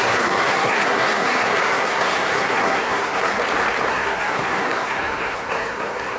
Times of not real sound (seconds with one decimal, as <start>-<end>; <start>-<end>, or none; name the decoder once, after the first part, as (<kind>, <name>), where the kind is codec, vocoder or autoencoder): 0.0-3.4 (codec, SNAC); 3.9-6.2